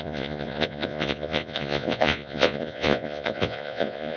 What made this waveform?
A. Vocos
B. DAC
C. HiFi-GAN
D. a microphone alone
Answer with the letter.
A